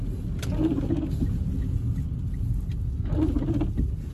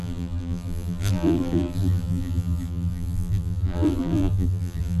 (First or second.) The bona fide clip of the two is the first